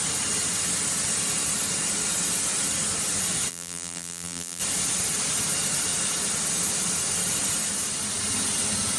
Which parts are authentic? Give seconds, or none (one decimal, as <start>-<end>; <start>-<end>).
0.0-3.5; 4.6-9.0

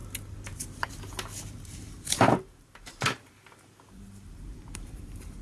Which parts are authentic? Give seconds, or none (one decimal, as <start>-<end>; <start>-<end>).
0.0-0.6

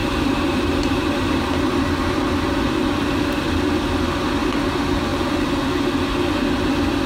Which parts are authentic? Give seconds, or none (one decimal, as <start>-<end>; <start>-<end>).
1.8-5.1; 5.6-7.1

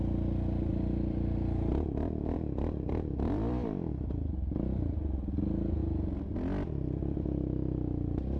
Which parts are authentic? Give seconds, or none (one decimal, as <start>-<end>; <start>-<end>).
0.0-0.7; 3.9-5.8; 6.7-8.4

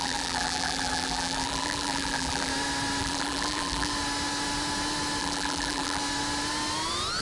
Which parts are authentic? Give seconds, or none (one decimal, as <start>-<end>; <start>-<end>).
2.5-3.0; 3.9-5.2; 6.0-7.2